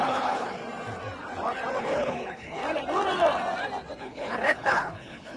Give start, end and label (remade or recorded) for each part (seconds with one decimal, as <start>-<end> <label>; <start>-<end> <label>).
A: 0.0-0.6 remade; 0.6-1.8 recorded; 1.8-2.6 remade; 2.6-4.0 recorded; 4.0-5.4 remade